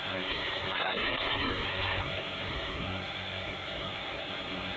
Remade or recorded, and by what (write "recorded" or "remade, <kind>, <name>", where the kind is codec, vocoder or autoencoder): remade, codec, SNAC